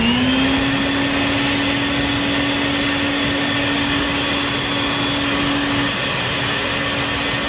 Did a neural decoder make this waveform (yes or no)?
no